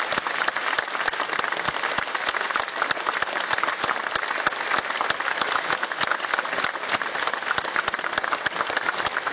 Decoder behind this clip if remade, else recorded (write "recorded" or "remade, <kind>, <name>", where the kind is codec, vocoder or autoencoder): recorded